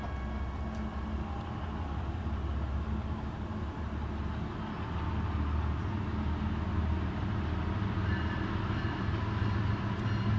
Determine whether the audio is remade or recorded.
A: recorded